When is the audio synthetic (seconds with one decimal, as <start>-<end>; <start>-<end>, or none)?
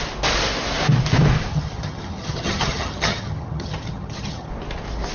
1.5-4.5